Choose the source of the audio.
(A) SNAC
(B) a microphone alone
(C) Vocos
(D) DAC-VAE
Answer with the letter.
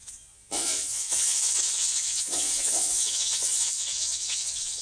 C